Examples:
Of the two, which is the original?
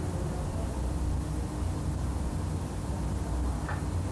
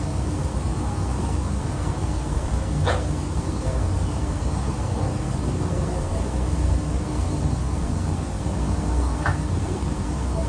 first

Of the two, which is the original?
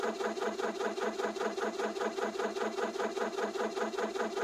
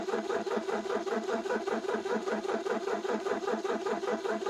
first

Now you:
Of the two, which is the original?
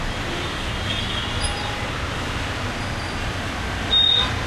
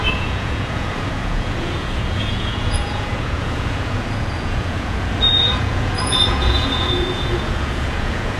first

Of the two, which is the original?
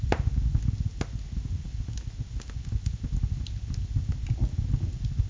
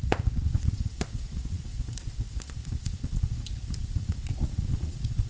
first